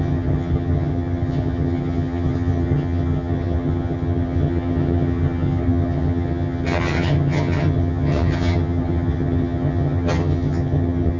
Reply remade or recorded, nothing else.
remade